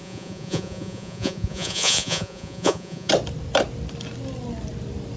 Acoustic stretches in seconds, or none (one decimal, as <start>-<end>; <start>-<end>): 3.1-5.2